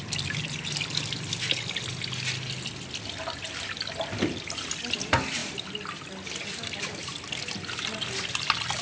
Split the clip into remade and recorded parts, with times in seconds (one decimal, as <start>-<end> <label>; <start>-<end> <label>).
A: 0.0-8.8 recorded